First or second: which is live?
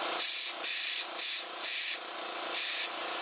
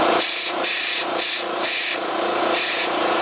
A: first